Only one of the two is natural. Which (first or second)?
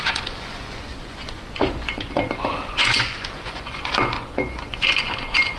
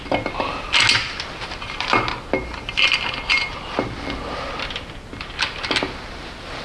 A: second